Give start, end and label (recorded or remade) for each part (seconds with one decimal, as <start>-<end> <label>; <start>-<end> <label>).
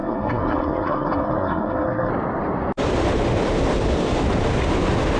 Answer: 0.0-2.1 remade; 2.1-5.2 recorded